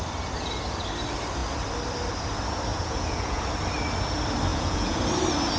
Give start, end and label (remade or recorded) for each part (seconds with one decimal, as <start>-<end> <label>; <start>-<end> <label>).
0.0-2.7 recorded; 2.7-3.4 remade; 3.4-4.5 recorded; 4.5-5.0 remade; 5.0-5.6 recorded